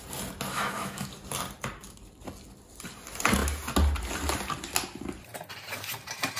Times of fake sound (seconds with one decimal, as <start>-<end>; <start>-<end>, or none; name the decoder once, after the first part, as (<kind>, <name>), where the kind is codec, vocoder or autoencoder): 0.5-1.1 (autoencoder, DAC-VAE)